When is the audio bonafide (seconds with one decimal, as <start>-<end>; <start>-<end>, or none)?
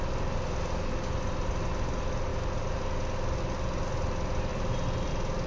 0.0-5.5